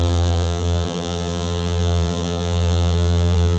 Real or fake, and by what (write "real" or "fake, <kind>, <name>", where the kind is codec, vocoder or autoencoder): fake, vocoder, BigVGAN v2